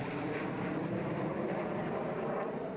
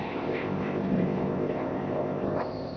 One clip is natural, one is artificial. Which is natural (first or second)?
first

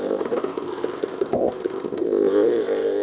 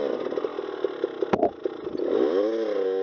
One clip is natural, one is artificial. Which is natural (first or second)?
second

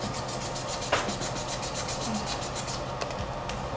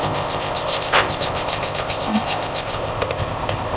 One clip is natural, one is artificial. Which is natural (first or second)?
first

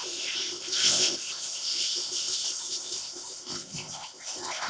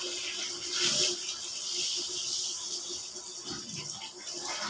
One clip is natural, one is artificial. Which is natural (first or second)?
second